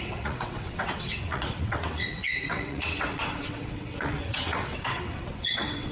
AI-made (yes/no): yes